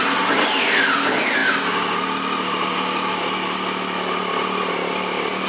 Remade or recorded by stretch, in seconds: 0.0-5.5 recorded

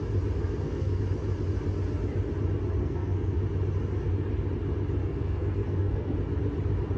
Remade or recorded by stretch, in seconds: 0.0-0.4 recorded; 0.4-1.0 remade; 1.0-2.8 recorded; 2.8-3.4 remade; 3.4-5.0 recorded; 5.0-6.2 remade; 6.2-7.0 recorded

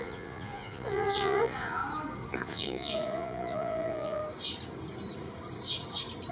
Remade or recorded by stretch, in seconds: 0.0-1.8 remade; 1.8-2.3 recorded; 2.3-4.2 remade; 4.2-6.3 recorded

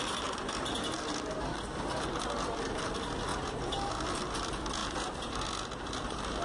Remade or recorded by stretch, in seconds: 0.0-3.3 recorded; 3.3-3.9 remade; 3.9-4.8 recorded; 4.8-5.5 remade; 5.5-6.4 recorded